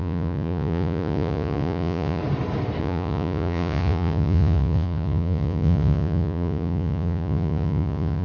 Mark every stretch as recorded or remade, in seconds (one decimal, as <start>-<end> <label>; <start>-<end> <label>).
0.0-2.2 remade; 2.2-2.8 recorded; 2.8-8.2 remade